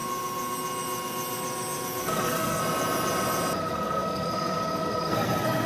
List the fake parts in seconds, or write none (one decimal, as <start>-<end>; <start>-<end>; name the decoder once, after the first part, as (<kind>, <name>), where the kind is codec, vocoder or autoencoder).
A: 2.0-2.6 (codec, SNAC); 3.6-5.7